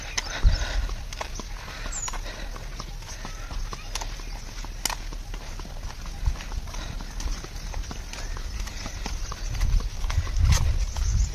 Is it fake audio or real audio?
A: real